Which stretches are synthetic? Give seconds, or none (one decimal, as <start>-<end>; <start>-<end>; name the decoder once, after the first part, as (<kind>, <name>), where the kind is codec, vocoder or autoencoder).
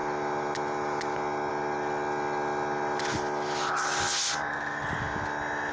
none